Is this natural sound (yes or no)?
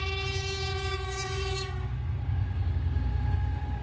no